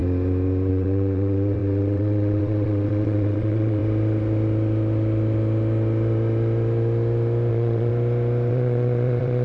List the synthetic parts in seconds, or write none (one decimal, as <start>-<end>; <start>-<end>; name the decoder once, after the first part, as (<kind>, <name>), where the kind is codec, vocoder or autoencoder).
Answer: 0.7-3.8 (vocoder, WaveNeXt); 7.5-7.9; 8.5-9.4